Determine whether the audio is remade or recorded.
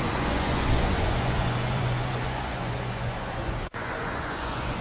remade